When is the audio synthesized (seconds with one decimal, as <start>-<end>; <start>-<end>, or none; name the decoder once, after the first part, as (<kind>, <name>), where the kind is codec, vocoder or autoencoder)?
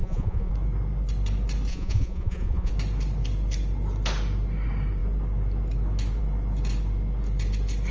0.0-0.5 (vocoder, Vocos); 1.7-2.7